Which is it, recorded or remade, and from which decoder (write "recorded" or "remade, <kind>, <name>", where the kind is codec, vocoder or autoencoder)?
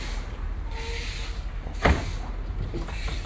recorded